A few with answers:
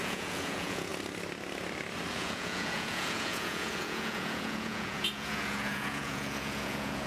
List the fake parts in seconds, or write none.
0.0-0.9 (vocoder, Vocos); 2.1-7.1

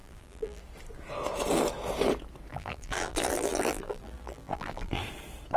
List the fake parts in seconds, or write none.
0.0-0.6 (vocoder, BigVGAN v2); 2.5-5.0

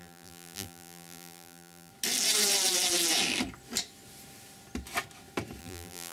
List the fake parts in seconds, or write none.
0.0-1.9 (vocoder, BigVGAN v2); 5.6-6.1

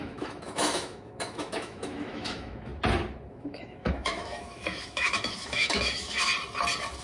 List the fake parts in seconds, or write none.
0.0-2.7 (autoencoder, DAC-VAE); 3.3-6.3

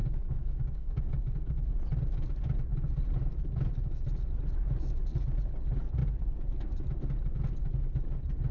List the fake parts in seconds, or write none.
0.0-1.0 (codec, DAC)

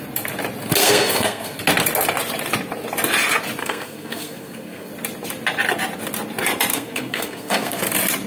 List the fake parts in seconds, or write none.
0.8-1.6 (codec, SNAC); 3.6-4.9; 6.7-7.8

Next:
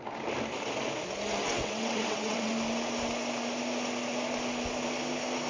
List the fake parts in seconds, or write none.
1.4-2.5 (vocoder, WaveNeXt)